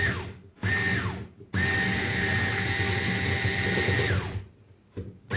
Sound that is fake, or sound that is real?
real